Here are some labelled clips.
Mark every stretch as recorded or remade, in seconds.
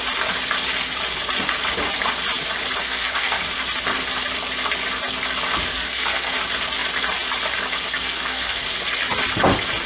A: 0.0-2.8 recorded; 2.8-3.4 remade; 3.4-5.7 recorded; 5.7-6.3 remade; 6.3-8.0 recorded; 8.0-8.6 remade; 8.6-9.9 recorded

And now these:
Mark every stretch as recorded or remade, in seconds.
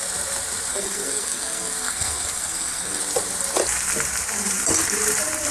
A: 0.0-0.7 recorded; 0.7-3.0 remade; 3.0-5.5 recorded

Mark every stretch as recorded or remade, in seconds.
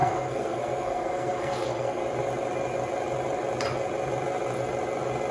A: 0.0-2.0 remade; 2.0-5.3 recorded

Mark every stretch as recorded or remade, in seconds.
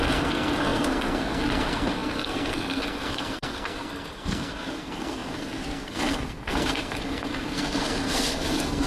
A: 0.0-8.9 remade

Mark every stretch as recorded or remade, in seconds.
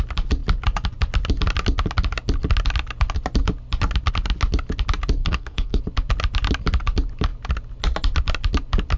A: 0.0-5.2 recorded; 5.2-5.8 remade; 5.8-9.0 recorded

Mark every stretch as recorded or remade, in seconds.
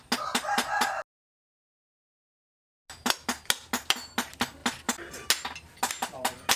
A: 0.0-6.6 recorded